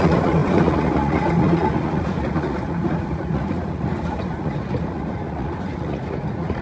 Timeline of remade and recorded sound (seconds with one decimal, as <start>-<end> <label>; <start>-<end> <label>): 0.0-6.6 remade